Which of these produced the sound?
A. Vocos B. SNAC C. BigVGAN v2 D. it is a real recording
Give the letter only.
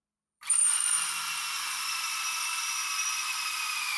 C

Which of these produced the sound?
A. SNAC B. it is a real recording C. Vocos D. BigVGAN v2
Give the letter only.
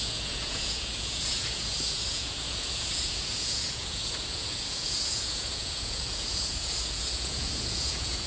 C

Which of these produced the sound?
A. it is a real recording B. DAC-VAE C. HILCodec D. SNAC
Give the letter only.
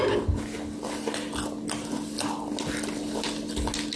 A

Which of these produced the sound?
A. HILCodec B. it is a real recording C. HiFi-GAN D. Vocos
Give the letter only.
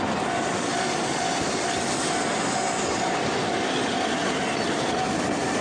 B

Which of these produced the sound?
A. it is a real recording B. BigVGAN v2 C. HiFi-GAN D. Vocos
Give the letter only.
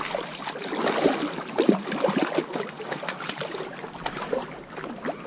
A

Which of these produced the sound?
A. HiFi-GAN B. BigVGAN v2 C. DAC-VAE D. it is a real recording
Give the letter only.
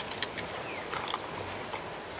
D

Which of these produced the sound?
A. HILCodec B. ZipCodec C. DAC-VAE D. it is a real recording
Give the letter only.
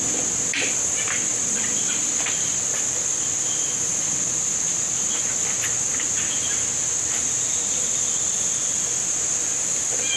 D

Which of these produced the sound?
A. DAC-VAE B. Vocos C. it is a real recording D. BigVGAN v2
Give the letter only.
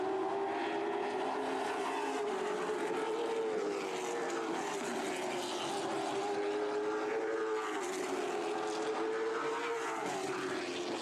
C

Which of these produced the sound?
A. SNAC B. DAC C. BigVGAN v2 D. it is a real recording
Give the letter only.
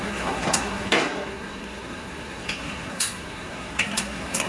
A